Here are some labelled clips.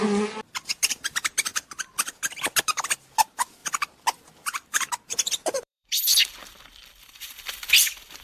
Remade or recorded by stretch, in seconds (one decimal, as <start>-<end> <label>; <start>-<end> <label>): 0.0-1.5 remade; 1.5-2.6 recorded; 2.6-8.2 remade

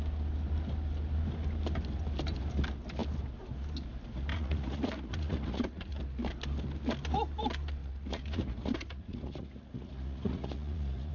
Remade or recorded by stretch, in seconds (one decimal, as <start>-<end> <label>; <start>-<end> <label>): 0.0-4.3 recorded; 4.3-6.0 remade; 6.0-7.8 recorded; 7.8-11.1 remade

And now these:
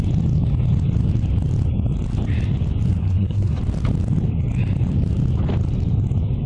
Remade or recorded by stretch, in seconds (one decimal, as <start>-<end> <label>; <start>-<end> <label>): 0.0-3.0 recorded; 3.0-3.6 remade; 3.6-6.5 recorded